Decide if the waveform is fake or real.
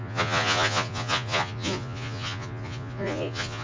fake